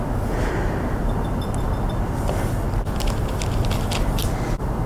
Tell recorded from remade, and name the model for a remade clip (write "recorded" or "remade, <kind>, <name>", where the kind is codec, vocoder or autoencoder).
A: recorded